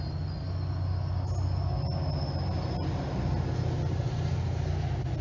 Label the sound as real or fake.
real